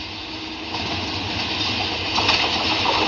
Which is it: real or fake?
real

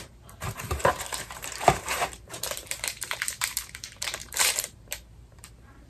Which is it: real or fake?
fake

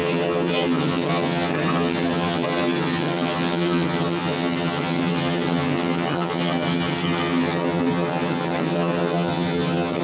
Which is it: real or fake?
fake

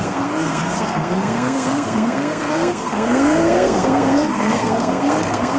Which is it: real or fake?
fake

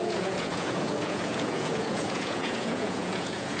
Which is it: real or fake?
fake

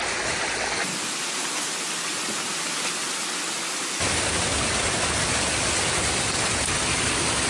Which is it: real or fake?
real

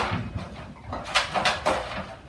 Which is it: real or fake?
real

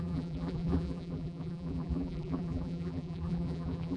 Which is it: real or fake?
fake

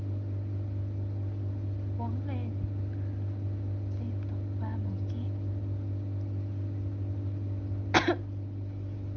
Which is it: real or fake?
real